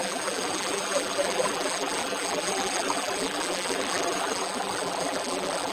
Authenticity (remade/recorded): remade